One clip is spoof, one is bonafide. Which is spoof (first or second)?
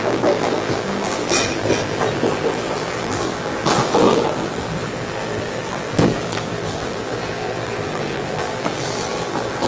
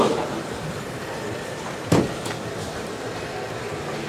first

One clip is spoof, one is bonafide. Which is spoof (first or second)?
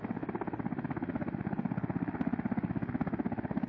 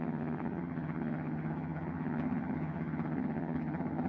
second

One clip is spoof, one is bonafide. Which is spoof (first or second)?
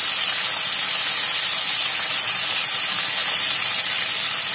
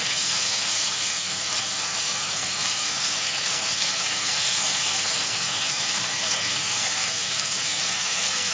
second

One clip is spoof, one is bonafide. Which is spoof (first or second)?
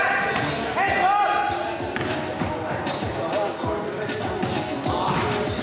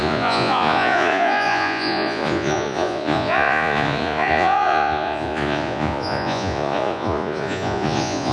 second